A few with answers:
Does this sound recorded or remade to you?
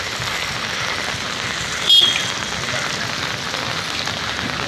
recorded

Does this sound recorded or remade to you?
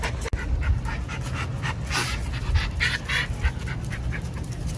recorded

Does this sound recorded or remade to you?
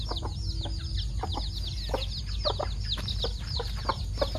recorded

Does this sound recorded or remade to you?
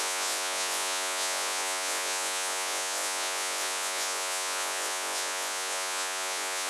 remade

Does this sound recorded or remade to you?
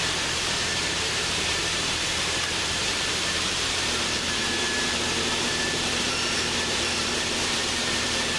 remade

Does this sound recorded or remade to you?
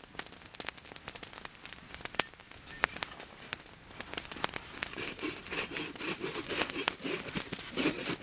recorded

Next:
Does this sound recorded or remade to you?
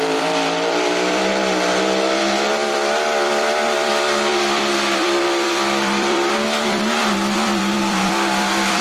remade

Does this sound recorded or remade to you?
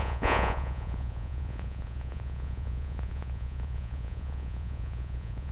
remade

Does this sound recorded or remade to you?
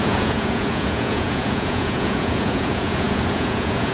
remade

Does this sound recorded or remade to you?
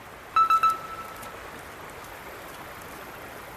recorded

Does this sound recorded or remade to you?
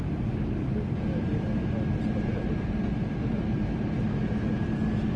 recorded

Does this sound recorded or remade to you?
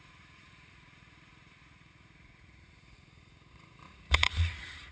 remade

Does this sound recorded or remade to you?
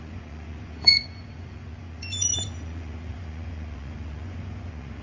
remade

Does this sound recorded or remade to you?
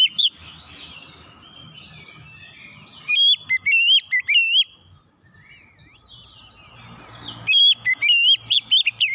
recorded